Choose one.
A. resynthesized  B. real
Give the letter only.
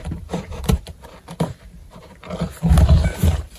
A